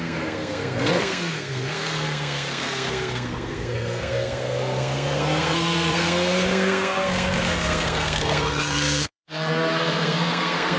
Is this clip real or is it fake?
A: fake